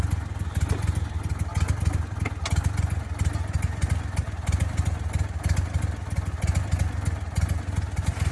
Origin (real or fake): real